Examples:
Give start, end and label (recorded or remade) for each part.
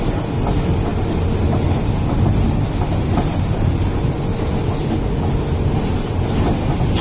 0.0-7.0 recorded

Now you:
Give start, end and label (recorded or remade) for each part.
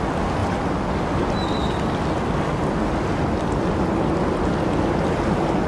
0.0-5.7 recorded